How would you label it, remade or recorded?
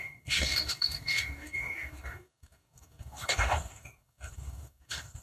remade